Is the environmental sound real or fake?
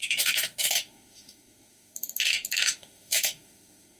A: fake